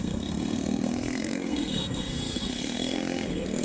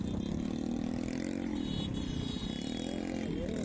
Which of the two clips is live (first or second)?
second